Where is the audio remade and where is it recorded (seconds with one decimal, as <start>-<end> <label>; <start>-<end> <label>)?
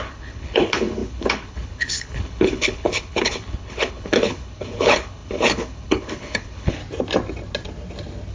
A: 0.0-6.8 remade; 6.8-8.3 recorded